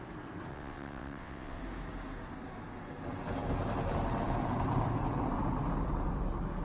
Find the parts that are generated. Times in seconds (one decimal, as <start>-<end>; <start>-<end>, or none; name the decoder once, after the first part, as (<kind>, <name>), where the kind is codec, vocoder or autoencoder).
0.5-1.6 (vocoder, WaveNeXt)